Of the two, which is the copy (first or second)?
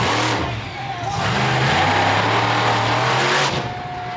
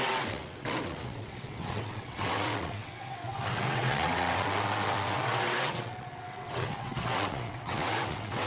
second